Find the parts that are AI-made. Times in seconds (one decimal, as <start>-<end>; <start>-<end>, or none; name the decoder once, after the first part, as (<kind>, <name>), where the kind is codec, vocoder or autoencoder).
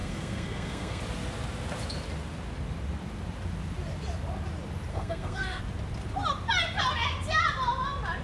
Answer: 0.0-1.0 (codec, SNAC); 4.9-5.6